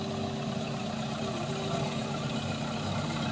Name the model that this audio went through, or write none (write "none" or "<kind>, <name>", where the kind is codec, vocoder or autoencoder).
none